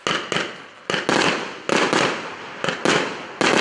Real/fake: real